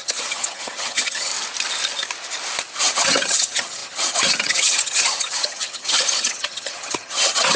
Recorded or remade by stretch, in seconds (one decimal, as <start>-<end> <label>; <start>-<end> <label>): 0.0-1.3 remade; 1.3-2.8 recorded; 2.8-7.6 remade